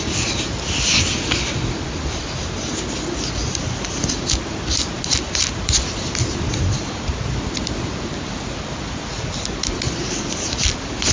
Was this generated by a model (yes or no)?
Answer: no